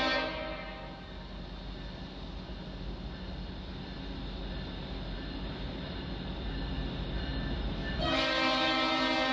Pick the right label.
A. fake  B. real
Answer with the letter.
B